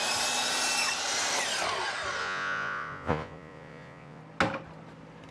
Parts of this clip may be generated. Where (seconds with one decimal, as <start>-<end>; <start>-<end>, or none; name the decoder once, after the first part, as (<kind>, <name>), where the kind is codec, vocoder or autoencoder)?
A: 2.2-4.2 (vocoder, Vocos)